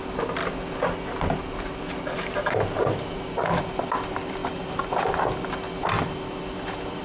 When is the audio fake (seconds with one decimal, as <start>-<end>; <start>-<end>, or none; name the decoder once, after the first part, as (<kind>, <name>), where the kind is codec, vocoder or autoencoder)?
none